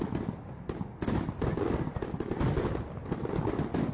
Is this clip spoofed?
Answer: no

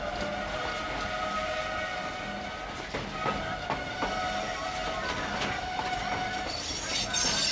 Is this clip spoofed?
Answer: no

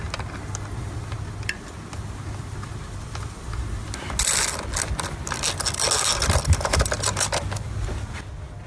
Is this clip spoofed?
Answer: no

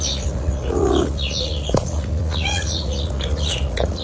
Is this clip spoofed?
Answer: yes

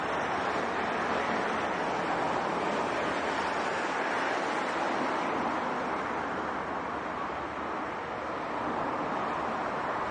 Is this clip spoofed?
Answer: no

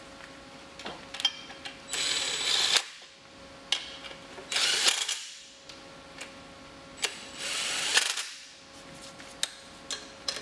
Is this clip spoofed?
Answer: no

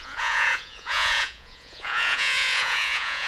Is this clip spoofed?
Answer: yes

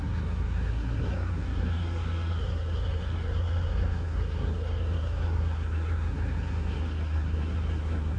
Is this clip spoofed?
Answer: yes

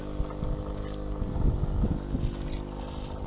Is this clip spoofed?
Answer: no